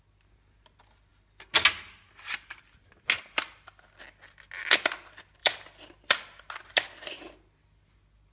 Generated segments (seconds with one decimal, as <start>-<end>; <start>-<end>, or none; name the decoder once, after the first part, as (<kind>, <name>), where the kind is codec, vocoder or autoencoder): 5.4-6.5 (vocoder, BigVGAN v2)